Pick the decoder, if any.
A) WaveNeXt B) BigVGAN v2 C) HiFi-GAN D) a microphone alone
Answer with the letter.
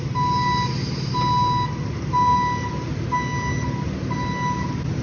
D